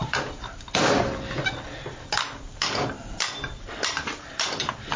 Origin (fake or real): real